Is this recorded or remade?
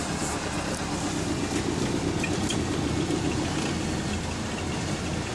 recorded